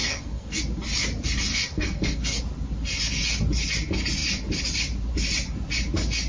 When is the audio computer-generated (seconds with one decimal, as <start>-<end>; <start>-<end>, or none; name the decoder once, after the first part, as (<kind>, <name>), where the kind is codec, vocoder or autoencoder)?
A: 0.0-0.6 (codec, SNAC); 1.5-2.4

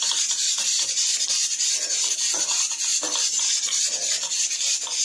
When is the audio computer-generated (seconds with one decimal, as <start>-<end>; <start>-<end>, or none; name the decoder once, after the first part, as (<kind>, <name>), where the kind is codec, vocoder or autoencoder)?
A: 0.0-1.1 (vocoder, BigVGAN v2); 2.1-2.9; 4.1-5.0

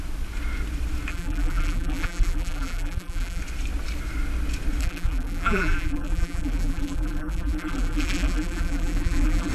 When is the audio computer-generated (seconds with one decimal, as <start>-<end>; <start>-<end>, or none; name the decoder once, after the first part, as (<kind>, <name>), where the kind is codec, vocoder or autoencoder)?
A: 1.1-3.4 (vocoder, BigVGAN v2); 4.8-9.5

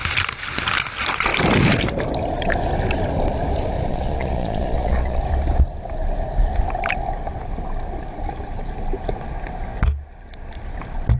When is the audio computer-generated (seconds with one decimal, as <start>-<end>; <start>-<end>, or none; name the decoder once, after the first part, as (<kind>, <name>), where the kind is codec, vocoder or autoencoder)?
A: 3.9-5.2 (vocoder, Vocos)